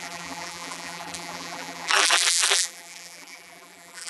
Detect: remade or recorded remade